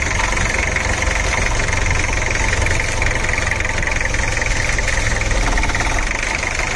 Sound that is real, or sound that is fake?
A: real